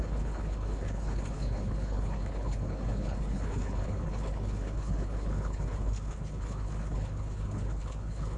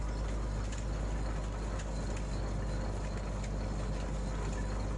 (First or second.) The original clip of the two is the second